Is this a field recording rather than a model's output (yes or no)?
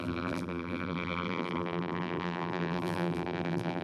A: no